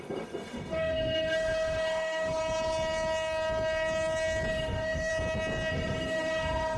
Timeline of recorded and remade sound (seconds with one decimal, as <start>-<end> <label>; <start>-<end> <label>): 0.0-2.4 remade; 2.4-4.5 recorded; 4.5-5.1 remade; 5.1-5.7 recorded; 5.7-6.8 remade